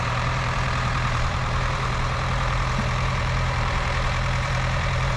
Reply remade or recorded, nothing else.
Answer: remade